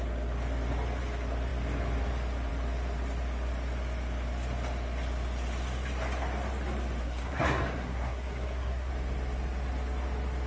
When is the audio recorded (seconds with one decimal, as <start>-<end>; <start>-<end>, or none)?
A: 0.0-7.0; 8.9-10.5